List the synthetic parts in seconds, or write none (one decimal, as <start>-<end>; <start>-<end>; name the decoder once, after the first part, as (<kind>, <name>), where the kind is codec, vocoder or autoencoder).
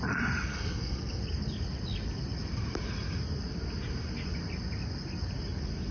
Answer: 0.5-1.2 (codec, SNAC)